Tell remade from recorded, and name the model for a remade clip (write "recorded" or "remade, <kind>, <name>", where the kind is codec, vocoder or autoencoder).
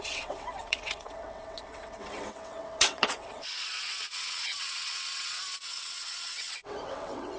remade, vocoder, WaveNeXt